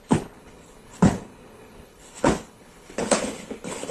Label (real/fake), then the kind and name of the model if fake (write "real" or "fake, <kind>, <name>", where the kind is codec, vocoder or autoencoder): fake, codec, HILCodec